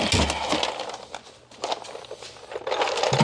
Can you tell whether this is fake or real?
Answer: real